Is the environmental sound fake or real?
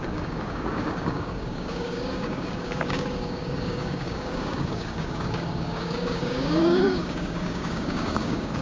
fake